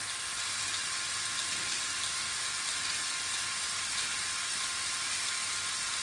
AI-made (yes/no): no